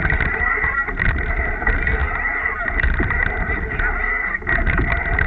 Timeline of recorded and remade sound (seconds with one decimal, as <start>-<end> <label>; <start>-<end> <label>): 0.0-5.3 recorded